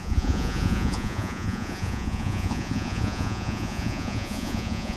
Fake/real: fake